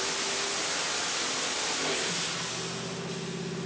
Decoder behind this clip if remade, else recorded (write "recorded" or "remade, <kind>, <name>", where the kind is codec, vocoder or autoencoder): recorded